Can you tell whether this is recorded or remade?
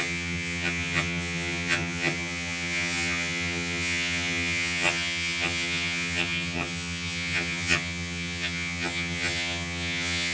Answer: remade